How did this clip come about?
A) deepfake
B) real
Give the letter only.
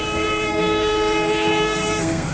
A